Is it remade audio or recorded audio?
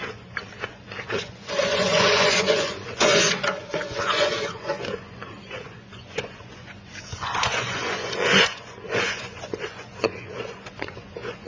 remade